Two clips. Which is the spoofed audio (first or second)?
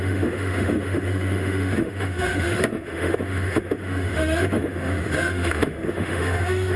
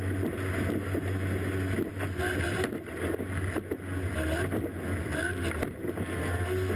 first